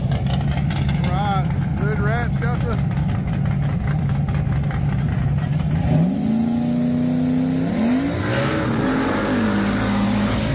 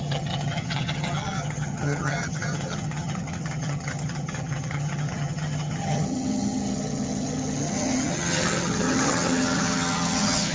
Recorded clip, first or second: first